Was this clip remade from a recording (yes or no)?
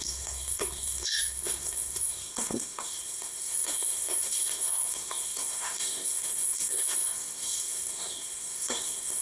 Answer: yes